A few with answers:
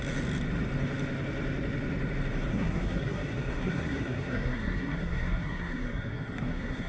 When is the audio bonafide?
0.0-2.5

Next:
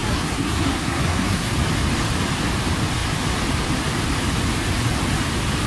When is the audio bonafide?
1.5-5.7

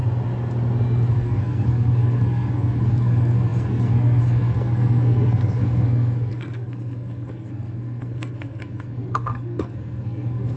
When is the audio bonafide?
0.0-1.1